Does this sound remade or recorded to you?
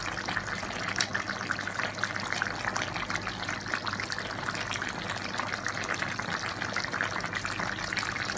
recorded